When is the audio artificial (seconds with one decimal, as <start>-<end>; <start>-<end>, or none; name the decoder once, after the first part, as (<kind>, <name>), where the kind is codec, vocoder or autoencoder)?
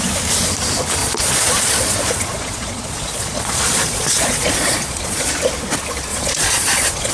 1.0-5.3 (vocoder, Vocos); 6.1-7.1